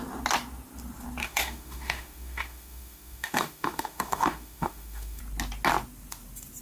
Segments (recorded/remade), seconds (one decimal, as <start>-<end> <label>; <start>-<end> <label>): 0.0-1.2 recorded; 1.2-5.2 remade; 5.2-6.6 recorded